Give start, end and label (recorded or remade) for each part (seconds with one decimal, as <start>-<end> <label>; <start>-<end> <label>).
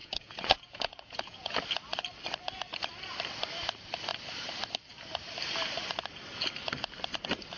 0.0-1.5 remade; 1.5-7.6 recorded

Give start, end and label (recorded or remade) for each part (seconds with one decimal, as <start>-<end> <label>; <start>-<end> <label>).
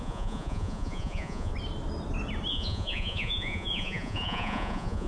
0.0-1.5 remade; 1.5-2.5 recorded; 2.5-5.1 remade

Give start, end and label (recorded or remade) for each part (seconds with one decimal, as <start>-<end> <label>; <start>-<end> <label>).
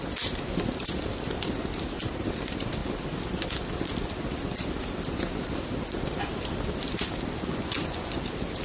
0.0-7.5 recorded; 7.5-8.2 remade; 8.2-8.6 recorded